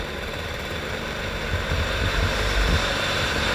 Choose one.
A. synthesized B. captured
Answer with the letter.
A